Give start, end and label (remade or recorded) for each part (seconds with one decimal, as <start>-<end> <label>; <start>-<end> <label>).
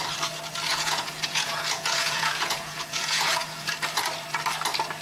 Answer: 0.0-0.7 recorded; 0.7-3.7 remade; 3.7-5.0 recorded